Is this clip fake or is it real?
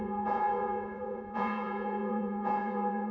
fake